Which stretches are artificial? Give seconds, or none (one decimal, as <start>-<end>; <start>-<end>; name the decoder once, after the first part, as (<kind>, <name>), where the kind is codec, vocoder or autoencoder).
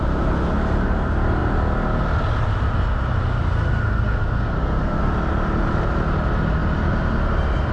3.8-5.1 (codec, SNAC)